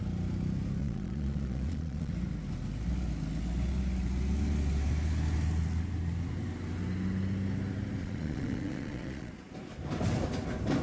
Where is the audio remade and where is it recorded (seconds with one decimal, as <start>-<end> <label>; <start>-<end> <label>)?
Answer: 0.0-0.8 recorded; 0.8-2.1 remade; 2.1-8.0 recorded; 8.0-9.3 remade; 9.3-10.8 recorded